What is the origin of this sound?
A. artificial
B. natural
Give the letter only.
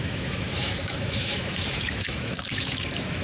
A